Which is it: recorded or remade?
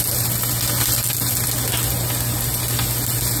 recorded